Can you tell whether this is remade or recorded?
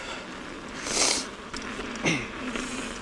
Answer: recorded